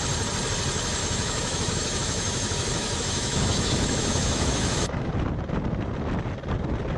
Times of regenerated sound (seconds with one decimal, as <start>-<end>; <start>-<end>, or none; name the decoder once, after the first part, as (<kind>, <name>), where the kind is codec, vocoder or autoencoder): 1.0-5.1 (autoencoder, DAC-VAE)